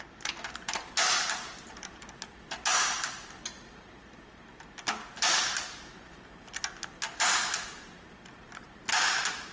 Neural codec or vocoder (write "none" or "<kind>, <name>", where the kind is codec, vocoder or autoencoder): none